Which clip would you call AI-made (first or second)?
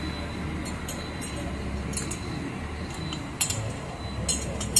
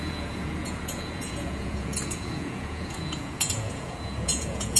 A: second